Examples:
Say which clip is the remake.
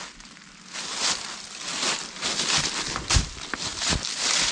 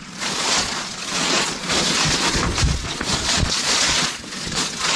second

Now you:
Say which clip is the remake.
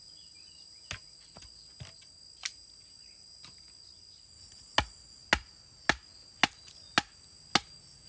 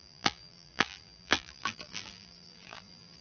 second